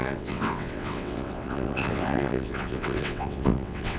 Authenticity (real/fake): fake